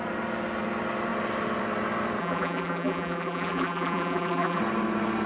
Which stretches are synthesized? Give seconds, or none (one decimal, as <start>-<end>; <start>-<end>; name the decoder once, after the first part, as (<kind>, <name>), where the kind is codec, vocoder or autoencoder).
2.2-4.6 (vocoder, BigVGAN v2)

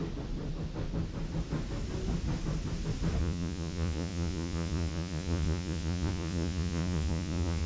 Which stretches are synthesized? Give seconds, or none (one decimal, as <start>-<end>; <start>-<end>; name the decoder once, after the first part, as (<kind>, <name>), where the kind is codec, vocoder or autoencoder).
3.2-7.7 (vocoder, Vocos)

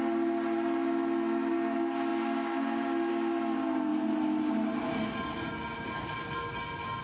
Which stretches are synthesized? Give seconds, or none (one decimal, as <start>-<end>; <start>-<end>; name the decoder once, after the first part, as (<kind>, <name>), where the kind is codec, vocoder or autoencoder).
none

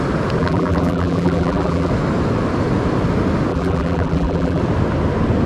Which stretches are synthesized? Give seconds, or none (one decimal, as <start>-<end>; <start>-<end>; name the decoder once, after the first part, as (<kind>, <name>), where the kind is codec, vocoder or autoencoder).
0.4-1.9 (vocoder, BigVGAN v2); 3.5-4.6

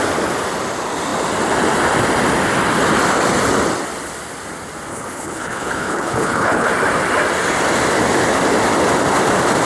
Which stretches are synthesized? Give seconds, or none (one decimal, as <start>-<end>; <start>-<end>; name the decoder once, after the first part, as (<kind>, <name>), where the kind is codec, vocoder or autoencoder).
4.9-6.7 (codec, HILCodec)

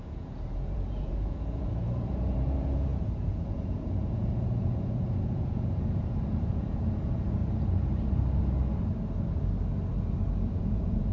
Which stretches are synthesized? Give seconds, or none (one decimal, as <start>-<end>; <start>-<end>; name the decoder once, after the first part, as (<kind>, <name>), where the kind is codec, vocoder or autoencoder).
0.0-7.4 (vocoder, Vocos); 10.5-11.1

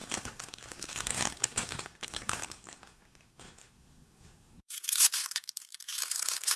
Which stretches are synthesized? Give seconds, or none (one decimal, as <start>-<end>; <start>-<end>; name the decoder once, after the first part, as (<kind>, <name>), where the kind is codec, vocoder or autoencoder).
0.0-6.6 (codec, SNAC)

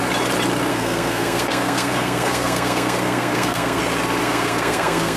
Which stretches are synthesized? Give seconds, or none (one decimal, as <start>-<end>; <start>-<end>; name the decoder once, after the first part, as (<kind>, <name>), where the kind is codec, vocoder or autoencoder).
0.7-3.8 (codec, SNAC); 4.2-5.2